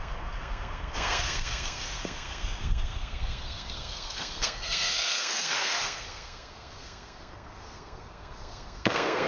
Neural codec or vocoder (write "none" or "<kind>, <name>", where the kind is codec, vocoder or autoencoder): codec, SNAC